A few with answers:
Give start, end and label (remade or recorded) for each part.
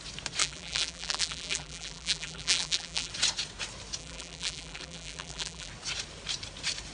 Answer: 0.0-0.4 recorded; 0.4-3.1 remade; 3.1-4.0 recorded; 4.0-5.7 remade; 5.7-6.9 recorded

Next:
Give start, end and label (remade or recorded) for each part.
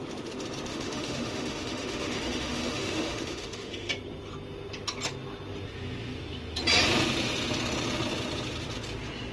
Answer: 0.0-0.7 recorded; 0.7-3.9 remade; 3.9-9.3 recorded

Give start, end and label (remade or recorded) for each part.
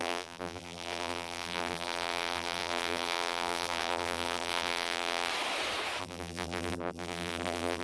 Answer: 0.0-5.3 remade; 5.3-6.0 recorded; 6.0-7.8 remade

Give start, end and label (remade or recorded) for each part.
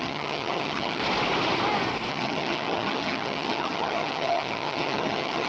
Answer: 0.0-1.0 remade; 1.0-2.1 recorded; 2.1-5.5 remade